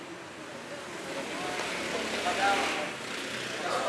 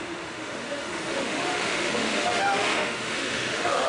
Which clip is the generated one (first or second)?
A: second